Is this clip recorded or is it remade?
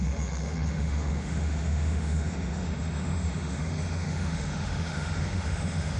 remade